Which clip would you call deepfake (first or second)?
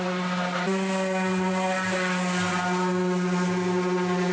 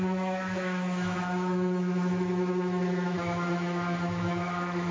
second